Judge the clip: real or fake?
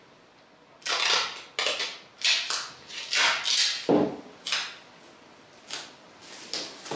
real